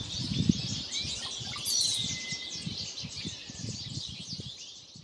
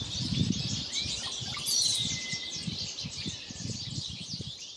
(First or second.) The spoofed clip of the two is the second